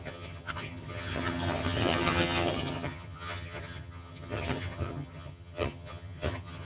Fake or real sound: fake